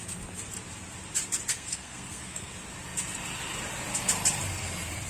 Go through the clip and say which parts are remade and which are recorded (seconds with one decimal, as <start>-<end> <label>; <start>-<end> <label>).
0.0-1.5 recorded; 1.5-2.5 remade; 2.5-5.1 recorded